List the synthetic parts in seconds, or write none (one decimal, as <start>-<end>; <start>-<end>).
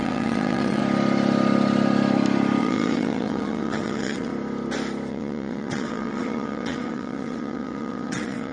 0.0-0.8; 2.6-4.3; 5.1-8.5